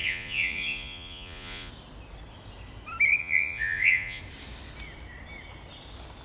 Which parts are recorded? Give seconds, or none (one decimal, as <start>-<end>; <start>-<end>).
1.7-3.2; 4.2-6.2